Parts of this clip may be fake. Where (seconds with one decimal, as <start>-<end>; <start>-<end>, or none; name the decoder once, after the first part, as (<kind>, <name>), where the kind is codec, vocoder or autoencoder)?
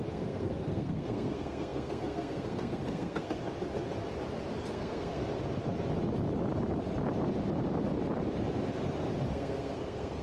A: 0.0-3.4 (codec, SNAC); 4.7-5.3; 9.3-10.2